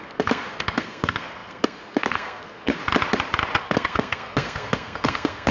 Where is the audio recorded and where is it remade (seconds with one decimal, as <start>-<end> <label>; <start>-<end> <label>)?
0.0-2.8 remade; 2.8-3.6 recorded; 3.6-5.5 remade